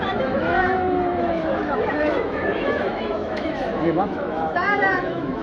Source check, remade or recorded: remade